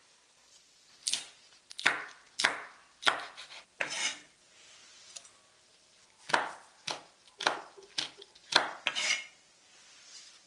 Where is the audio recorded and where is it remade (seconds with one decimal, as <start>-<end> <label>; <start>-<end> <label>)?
0.0-10.5 recorded

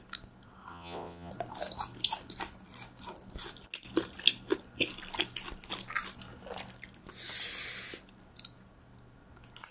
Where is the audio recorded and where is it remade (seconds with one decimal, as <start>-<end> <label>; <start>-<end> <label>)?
0.0-0.7 recorded; 0.7-1.3 remade; 1.3-9.7 recorded

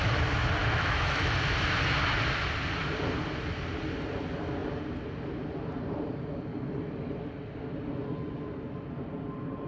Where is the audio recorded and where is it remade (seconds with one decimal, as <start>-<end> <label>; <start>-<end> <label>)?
0.0-0.6 recorded; 0.6-1.3 remade; 1.3-9.7 recorded

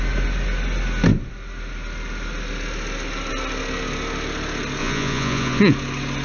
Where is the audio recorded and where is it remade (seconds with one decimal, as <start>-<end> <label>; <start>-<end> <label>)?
0.0-4.8 recorded; 4.8-5.6 remade; 5.6-6.2 recorded

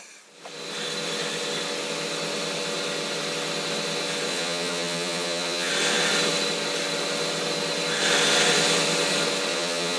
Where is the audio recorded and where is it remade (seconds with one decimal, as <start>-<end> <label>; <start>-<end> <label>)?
0.0-4.3 recorded; 4.3-5.7 remade; 5.7-9.5 recorded; 9.5-10.0 remade